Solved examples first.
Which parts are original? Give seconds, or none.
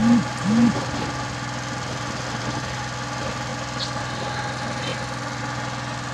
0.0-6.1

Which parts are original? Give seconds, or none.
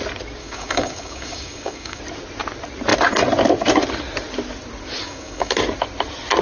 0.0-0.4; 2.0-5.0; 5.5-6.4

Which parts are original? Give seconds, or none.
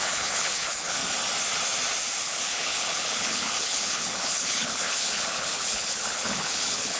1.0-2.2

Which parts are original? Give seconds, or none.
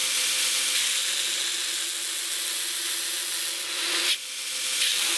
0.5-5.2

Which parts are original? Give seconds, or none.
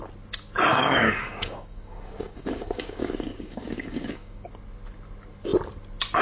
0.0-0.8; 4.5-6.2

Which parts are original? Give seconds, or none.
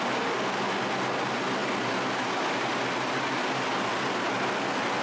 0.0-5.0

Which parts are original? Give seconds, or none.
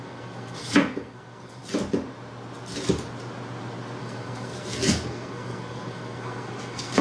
1.6-4.0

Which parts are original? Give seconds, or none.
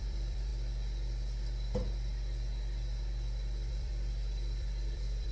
0.5-3.7